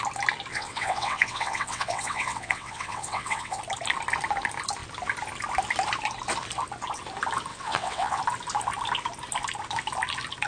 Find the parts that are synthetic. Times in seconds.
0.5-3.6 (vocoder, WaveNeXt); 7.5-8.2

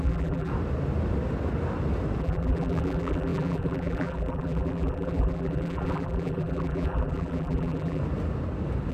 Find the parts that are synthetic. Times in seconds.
0.0-0.5 (vocoder, BigVGAN v2); 2.2-8.0

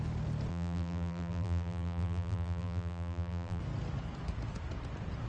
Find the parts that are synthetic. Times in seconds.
0.5-3.6 (vocoder, BigVGAN v2)

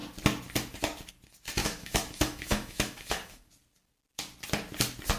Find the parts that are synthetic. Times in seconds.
1.6-3.4 (autoencoder, DAC-VAE)

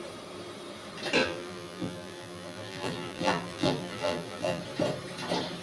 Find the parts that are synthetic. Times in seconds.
1.2-4.6 (vocoder, BigVGAN v2)

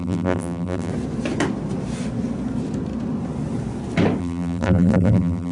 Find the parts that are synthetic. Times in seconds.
0.0-0.9 (vocoder, BigVGAN v2); 4.2-5.5

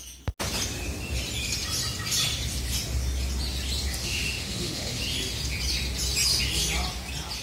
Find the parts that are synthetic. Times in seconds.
4.0-5.0 (autoencoder, DAC-VAE)